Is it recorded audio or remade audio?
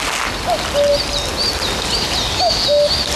recorded